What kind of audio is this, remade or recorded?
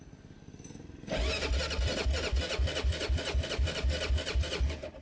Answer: recorded